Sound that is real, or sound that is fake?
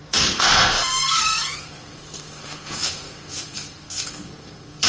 fake